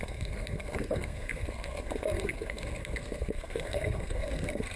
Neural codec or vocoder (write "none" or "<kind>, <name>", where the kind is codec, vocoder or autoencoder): codec, SNAC